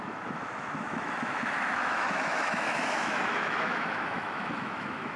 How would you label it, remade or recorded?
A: remade